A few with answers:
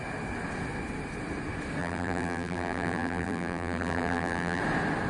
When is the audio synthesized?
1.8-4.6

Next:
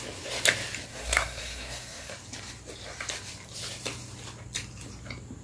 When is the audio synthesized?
0.9-2.1

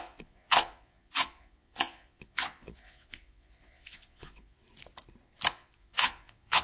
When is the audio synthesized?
0.0-4.6; 5.5-6.6